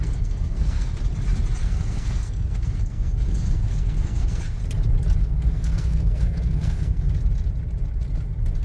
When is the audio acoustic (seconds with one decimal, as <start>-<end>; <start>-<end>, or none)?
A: 0.9-1.6; 4.6-5.2; 7.1-8.6

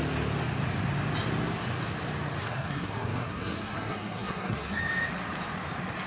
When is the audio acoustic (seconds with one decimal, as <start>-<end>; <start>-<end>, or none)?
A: 0.0-2.4; 4.8-6.1

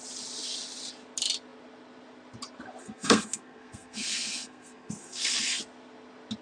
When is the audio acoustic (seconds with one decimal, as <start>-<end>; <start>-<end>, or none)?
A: 0.0-2.8; 5.6-6.4

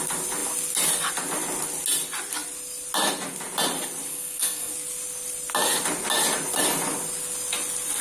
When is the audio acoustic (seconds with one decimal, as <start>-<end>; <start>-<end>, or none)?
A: 0.0-4.1; 4.7-8.0

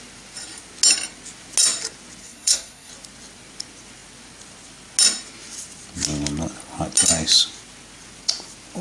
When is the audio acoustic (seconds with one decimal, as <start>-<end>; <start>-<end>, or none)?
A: 0.0-2.2; 2.9-8.8